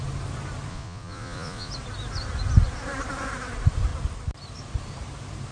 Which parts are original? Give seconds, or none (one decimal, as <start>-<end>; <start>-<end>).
0.0-0.7; 1.7-5.5